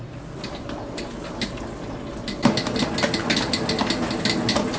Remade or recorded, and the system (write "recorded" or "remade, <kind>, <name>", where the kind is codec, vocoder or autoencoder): recorded